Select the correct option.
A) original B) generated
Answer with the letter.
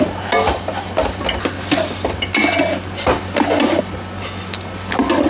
A